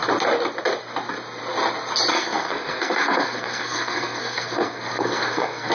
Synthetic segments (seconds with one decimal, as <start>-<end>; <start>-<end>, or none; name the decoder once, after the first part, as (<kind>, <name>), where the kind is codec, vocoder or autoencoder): 2.1-5.7 (codec, SNAC)